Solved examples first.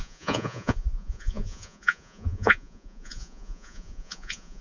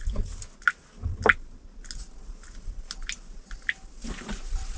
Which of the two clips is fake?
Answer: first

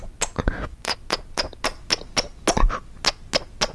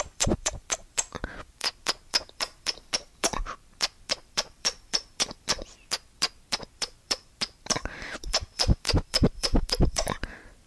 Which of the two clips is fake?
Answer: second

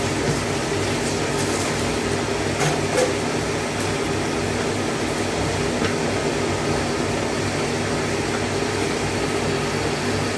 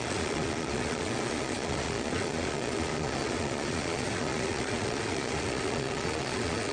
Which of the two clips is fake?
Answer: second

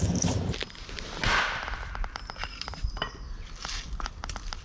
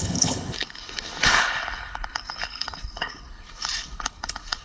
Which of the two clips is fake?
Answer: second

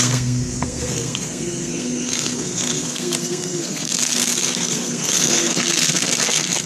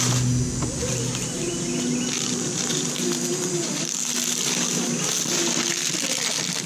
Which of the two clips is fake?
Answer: first